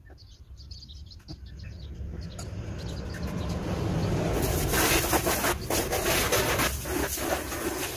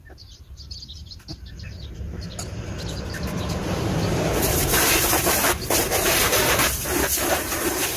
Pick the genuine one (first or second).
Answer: first